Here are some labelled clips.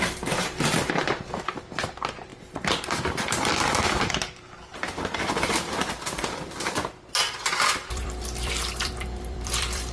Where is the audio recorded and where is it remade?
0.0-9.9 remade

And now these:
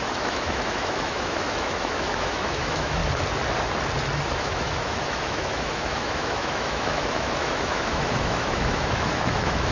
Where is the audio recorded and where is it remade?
0.0-3.0 remade; 3.0-4.3 recorded; 4.3-9.7 remade

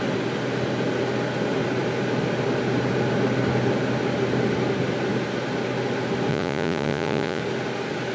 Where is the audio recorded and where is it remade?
0.0-6.3 recorded; 6.3-7.4 remade; 7.4-8.1 recorded

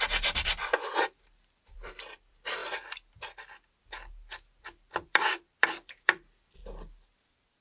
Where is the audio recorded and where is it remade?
0.0-2.6 remade; 2.6-3.7 recorded; 3.7-6.6 remade; 6.6-7.6 recorded

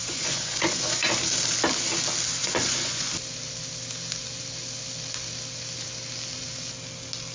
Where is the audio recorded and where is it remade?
0.0-1.1 remade; 1.1-2.4 recorded; 2.4-3.1 remade; 3.1-7.3 recorded

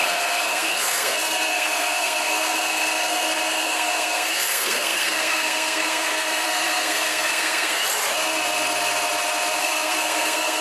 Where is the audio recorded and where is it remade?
0.0-7.8 remade; 7.8-9.6 recorded; 9.6-10.6 remade

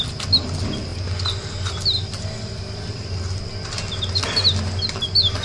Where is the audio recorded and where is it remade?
0.0-5.4 recorded